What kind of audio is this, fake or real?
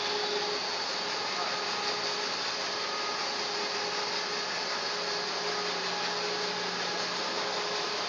real